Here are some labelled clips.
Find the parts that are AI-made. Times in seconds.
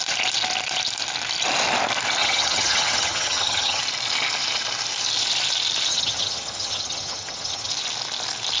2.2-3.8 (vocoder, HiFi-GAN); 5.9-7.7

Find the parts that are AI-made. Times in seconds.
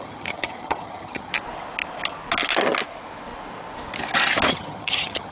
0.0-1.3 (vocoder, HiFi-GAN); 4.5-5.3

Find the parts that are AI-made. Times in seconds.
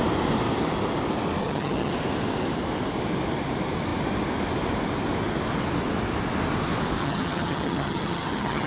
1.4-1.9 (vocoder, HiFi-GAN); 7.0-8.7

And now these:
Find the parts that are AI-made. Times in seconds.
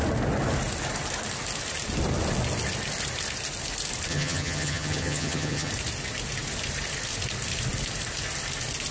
4.1-5.7 (vocoder, HiFi-GAN)